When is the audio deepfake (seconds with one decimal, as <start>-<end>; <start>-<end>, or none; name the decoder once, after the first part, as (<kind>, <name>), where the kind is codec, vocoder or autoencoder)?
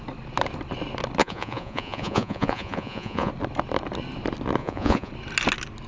1.2-3.3 (vocoder, Vocos); 4.6-5.1